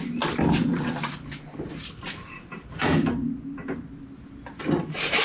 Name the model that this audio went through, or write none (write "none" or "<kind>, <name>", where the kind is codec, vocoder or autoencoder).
none